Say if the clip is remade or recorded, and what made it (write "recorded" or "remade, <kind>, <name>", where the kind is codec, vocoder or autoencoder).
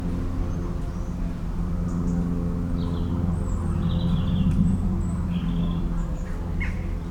recorded